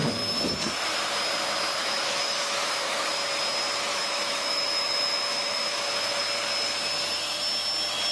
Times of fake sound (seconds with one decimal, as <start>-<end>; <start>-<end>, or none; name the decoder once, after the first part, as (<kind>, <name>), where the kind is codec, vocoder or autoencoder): 1.8-3.1 (autoencoder, DAC-VAE); 3.9-6.2